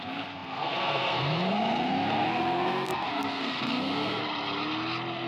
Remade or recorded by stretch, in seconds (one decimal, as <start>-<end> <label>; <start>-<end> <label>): 0.0-4.2 remade; 4.2-5.3 recorded